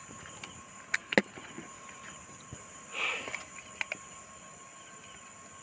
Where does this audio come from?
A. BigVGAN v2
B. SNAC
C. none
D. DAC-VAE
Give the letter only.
C